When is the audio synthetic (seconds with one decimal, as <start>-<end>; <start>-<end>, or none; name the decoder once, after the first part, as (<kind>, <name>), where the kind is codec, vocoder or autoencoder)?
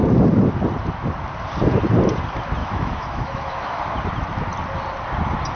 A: 2.6-3.8 (autoencoder, DAC-VAE)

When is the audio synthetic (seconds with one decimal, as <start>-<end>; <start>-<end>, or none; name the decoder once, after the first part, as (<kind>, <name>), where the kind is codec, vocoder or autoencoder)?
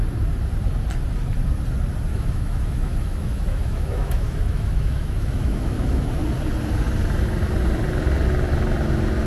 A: 2.1-6.1 (autoencoder, DAC-VAE)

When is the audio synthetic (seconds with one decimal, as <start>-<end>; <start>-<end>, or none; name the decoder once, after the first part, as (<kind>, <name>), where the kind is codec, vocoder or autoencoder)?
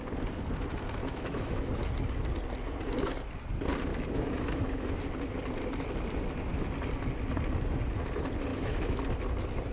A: 1.0-1.7 (autoencoder, DAC-VAE); 3.9-5.0; 8.5-9.0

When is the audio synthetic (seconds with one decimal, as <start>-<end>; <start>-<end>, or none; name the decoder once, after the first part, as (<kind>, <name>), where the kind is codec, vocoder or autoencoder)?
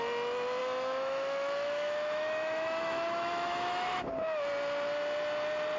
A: 0.6-4.1 (autoencoder, DAC-VAE)